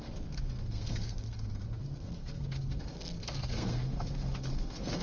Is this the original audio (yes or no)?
no